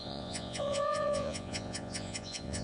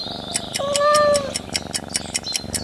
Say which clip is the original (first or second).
second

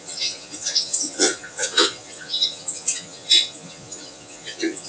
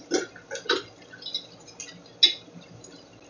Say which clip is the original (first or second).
second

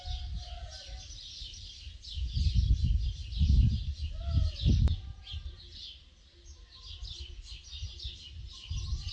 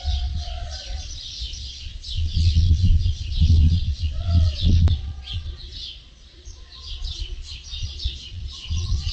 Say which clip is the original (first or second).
first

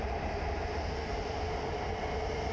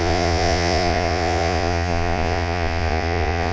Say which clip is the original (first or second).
first